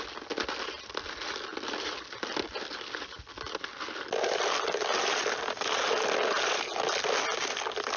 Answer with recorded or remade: recorded